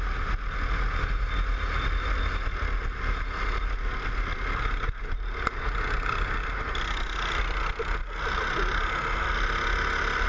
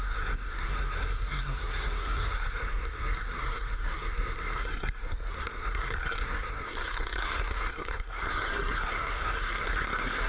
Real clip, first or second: first